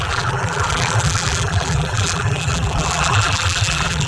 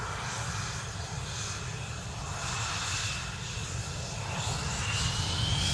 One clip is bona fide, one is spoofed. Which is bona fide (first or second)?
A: second